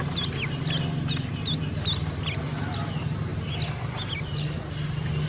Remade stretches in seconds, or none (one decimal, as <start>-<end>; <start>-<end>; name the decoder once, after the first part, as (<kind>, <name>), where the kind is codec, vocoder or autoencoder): none